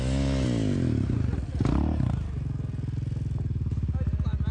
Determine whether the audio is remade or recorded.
recorded